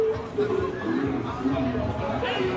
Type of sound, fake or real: real